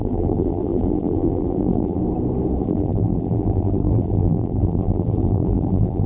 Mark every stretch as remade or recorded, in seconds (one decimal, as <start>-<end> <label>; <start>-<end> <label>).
0.0-2.0 remade; 2.0-2.6 recorded; 2.6-6.1 remade